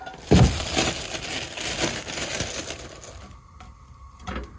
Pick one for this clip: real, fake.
real